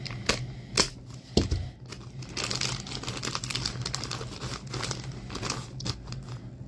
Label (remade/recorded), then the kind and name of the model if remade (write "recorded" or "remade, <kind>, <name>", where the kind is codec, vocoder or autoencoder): recorded